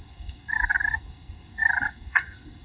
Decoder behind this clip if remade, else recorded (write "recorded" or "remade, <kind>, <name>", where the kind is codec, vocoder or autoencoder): remade, codec, SNAC